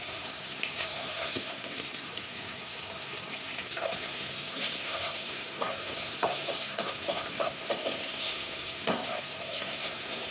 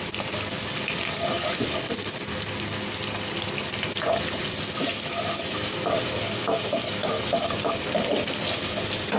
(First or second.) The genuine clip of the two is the second